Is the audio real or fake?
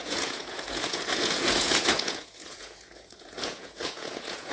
fake